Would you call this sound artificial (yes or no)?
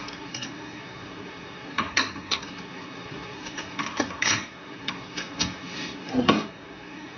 yes